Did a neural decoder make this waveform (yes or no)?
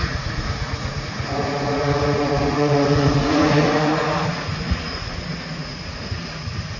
yes